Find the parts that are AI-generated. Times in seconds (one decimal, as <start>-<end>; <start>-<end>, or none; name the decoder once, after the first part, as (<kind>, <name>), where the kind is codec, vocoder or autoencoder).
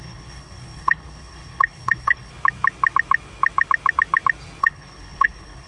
0.0-2.3 (codec, HILCodec); 4.6-5.7